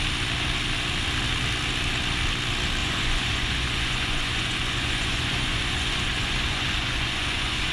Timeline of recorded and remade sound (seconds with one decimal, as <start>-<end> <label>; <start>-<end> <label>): 0.0-2.8 recorded; 2.8-7.7 remade